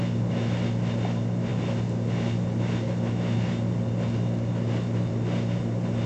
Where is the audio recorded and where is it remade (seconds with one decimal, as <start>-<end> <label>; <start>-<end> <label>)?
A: 0.0-6.1 recorded